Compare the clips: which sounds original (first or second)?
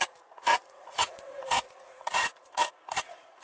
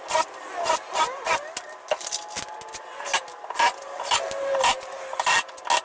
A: second